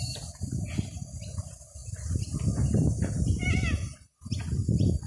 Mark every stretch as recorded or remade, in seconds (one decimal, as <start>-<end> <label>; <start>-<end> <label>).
0.0-5.1 recorded